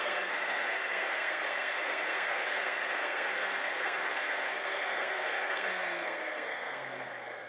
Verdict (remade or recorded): remade